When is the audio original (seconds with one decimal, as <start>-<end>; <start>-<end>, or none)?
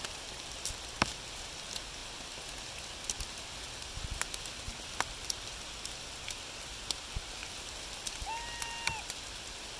0.0-9.8